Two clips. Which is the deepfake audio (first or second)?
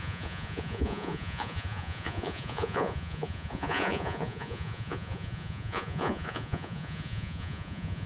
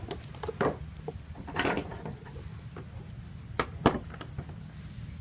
first